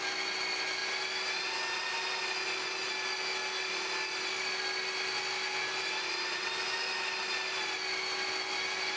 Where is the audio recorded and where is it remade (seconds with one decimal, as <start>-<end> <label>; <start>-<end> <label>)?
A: 0.0-9.0 recorded